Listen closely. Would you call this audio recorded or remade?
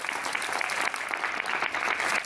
recorded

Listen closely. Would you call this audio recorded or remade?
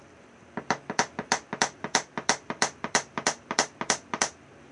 remade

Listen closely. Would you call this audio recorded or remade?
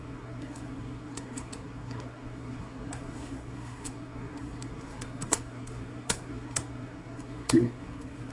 remade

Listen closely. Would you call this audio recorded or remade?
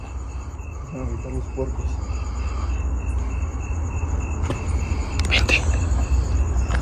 recorded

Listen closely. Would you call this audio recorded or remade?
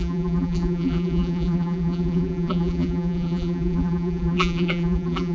remade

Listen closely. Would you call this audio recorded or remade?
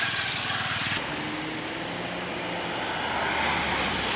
recorded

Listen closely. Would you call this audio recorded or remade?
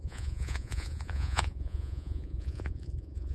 remade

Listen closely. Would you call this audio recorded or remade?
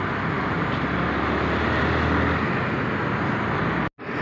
recorded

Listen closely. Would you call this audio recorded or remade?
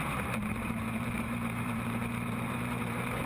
remade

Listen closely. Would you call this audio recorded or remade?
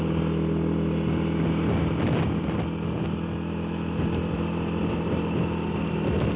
recorded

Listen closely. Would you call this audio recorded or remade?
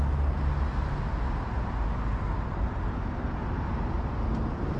recorded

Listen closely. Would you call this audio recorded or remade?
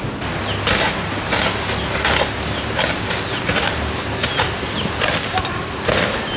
recorded